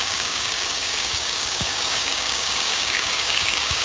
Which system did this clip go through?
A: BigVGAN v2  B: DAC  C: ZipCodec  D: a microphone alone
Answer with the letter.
B